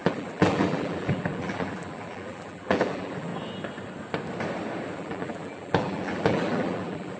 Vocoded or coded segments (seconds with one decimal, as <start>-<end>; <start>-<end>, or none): 0.0-3.3; 5.0-7.2